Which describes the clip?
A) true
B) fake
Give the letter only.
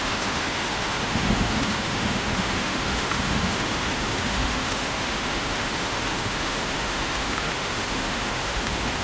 B